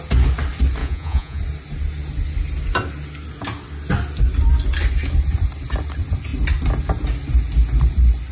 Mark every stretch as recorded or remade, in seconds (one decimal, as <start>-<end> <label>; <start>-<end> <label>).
0.0-0.8 recorded; 0.8-1.4 remade; 1.4-8.3 recorded